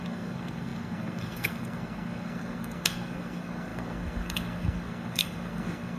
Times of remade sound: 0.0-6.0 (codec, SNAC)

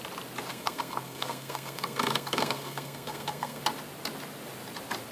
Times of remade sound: 0.5-3.6 (codec, SNAC)